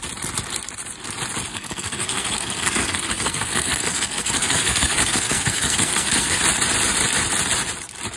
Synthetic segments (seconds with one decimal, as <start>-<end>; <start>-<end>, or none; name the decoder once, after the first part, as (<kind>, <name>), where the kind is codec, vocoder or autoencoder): 1.5-6.4 (codec, SNAC)